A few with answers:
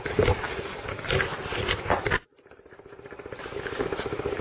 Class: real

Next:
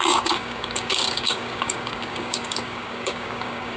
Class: fake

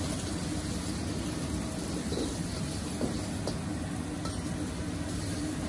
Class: real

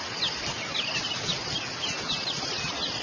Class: real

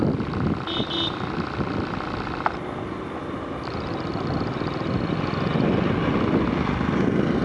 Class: real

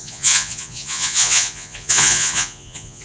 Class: fake